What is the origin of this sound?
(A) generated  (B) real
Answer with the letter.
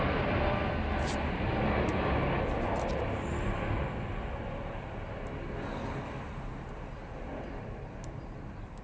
B